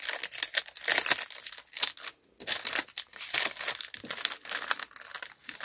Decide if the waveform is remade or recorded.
recorded